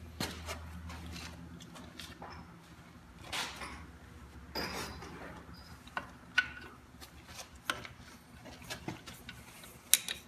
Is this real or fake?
real